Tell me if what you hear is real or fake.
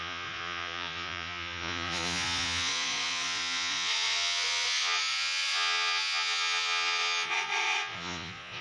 fake